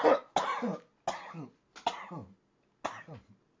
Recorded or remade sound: recorded